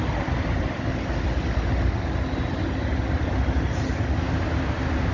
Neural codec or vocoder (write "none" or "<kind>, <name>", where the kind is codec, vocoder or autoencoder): none